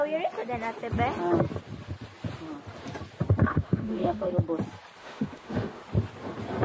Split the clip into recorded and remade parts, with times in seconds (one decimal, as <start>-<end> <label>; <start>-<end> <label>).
0.0-3.5 recorded; 3.5-4.3 remade; 4.3-5.0 recorded; 5.0-5.8 remade; 5.8-6.6 recorded